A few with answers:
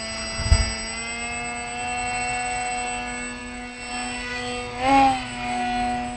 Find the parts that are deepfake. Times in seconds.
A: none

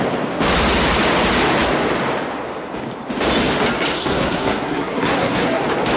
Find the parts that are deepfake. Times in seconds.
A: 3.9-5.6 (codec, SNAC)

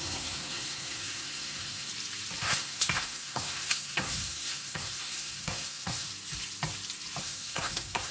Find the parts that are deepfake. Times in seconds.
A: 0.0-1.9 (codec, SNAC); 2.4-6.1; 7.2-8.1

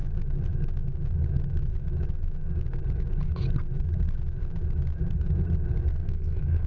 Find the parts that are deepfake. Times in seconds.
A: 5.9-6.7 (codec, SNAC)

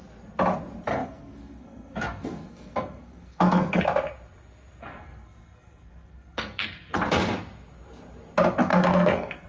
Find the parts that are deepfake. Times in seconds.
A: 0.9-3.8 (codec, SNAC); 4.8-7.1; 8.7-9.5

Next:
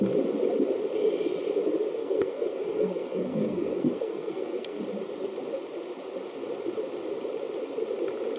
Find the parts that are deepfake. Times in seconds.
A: 2.0-4.8 (codec, SNAC)